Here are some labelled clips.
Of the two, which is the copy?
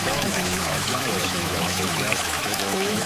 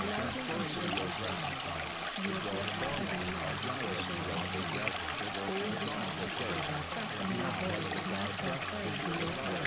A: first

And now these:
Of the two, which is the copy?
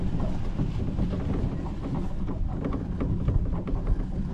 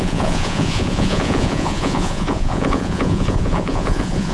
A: second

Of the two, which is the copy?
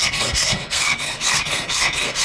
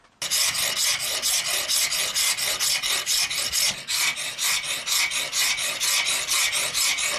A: first